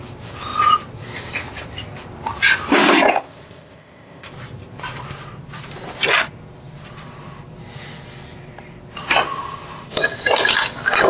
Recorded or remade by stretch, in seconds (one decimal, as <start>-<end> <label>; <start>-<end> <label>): 0.0-3.1 recorded; 3.1-4.3 remade; 4.3-11.1 recorded